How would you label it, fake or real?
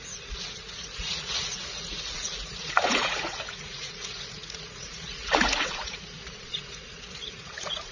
fake